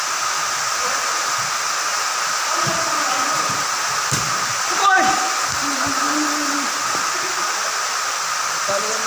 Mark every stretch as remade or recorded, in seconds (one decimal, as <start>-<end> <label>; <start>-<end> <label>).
0.0-9.1 recorded